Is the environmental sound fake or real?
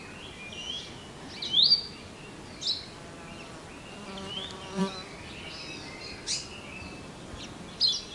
real